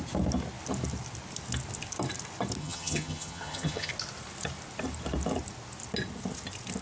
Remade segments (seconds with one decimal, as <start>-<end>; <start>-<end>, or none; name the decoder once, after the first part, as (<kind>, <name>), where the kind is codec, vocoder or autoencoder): 2.6-3.9 (vocoder, HiFi-GAN)